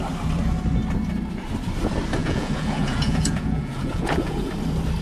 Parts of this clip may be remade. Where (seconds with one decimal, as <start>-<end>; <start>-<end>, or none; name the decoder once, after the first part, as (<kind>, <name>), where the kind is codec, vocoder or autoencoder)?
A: 2.2-4.5 (vocoder, Vocos)